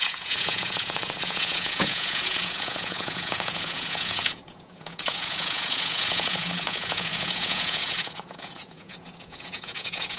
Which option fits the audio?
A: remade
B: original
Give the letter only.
A